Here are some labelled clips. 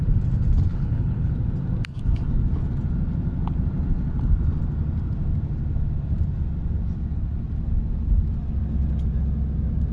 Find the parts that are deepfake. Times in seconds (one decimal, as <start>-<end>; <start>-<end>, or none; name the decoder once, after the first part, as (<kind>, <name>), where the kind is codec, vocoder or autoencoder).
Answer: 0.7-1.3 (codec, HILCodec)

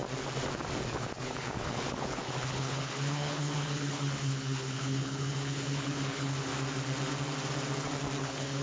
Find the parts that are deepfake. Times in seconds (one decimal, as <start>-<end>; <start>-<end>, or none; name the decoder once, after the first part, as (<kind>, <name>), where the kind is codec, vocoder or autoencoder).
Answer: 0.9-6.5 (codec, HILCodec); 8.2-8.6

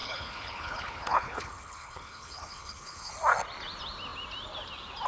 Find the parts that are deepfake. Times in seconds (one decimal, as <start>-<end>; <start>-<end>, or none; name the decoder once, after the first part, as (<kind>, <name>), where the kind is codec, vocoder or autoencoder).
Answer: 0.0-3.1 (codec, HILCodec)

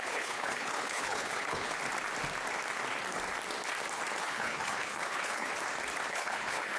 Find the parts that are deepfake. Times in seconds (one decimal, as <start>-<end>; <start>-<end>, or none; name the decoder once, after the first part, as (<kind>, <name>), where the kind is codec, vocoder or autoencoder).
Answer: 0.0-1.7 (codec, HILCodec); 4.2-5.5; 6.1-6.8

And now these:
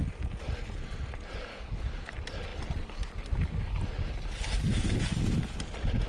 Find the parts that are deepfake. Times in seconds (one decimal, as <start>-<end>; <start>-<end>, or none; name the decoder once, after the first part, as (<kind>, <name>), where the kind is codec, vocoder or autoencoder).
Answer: 1.5-2.1 (codec, HILCodec)

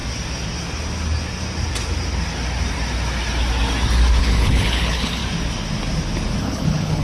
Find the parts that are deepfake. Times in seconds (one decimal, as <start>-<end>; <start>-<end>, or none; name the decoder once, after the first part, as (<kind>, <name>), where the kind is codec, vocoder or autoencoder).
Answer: 4.2-5.2 (codec, HILCodec); 6.4-7.0